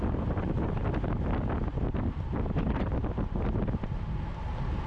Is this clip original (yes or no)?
yes